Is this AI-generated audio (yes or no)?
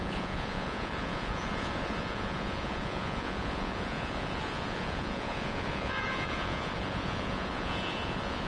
yes